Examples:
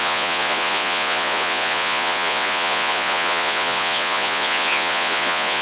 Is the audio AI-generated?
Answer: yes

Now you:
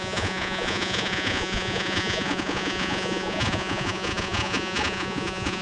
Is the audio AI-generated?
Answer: yes